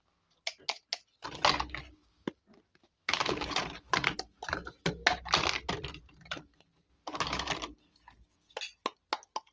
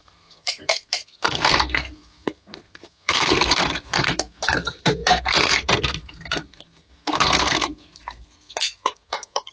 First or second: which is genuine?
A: first